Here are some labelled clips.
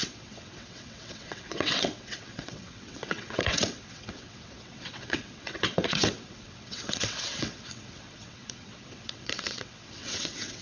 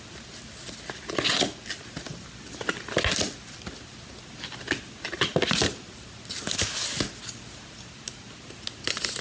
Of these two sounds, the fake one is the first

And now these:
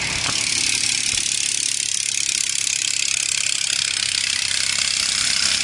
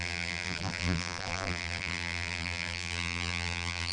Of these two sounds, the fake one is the second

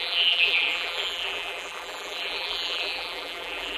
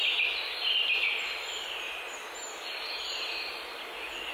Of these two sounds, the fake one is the first